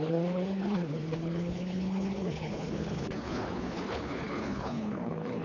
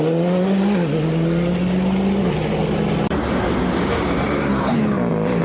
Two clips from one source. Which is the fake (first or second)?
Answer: first